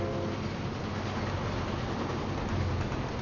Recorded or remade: recorded